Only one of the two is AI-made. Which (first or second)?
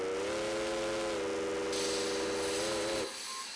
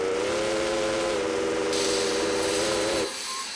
second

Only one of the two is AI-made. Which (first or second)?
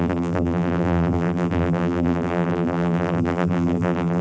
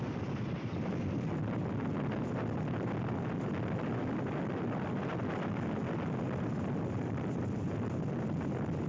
first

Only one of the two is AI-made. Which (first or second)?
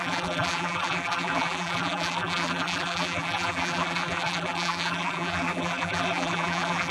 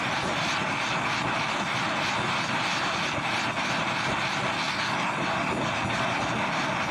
first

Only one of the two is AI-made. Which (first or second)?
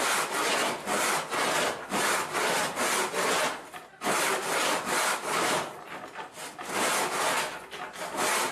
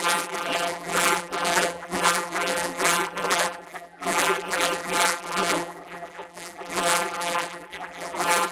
second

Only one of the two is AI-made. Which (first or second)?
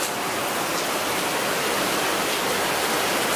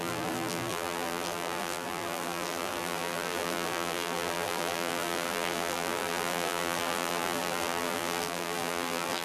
second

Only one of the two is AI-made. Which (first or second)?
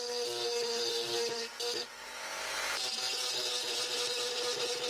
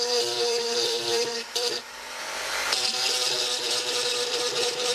second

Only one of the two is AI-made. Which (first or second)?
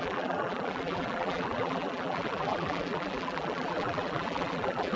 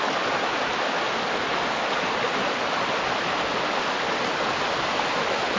first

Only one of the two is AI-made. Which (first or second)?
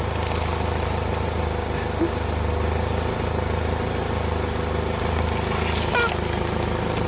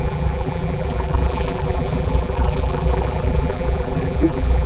second